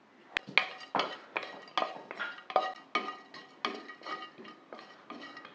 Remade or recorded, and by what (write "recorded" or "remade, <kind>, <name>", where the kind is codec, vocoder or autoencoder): recorded